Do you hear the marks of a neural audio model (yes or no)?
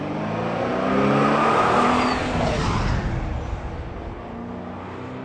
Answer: no